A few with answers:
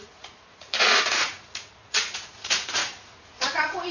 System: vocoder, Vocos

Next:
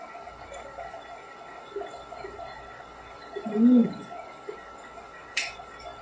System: codec, DAC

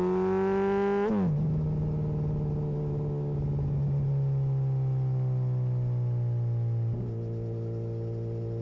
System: none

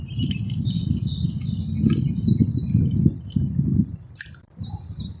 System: none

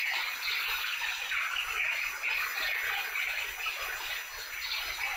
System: none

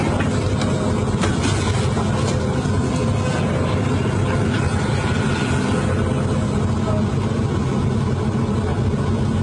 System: none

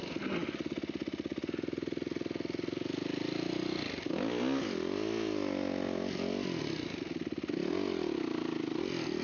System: none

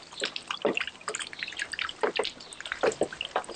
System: none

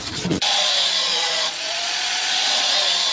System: vocoder, Vocos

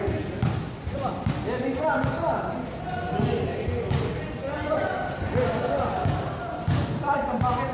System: none